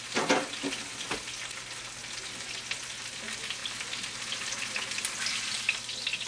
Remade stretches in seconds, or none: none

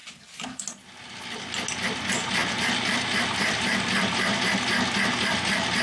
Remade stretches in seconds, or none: 2.4-4.4 (vocoder, BigVGAN v2)

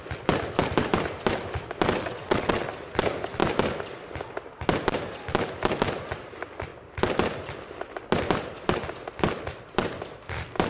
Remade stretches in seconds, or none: 2.0-2.7 (vocoder, WaveNeXt)

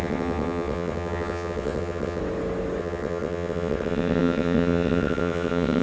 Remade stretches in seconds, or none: 0.0-2.2 (vocoder, WaveNeXt); 2.8-5.8

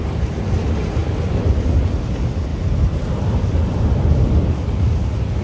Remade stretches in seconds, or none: none

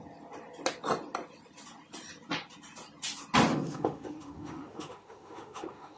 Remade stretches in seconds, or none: 3.5-6.0 (autoencoder, DAC-VAE)